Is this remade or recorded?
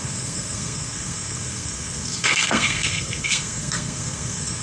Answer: remade